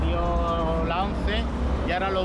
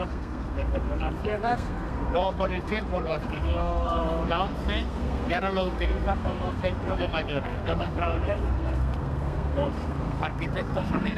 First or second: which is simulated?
second